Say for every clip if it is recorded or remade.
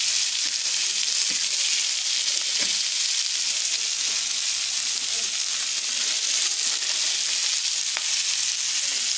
recorded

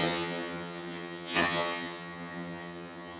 remade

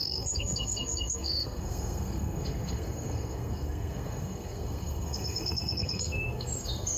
remade